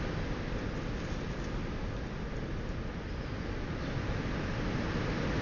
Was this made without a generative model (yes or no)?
yes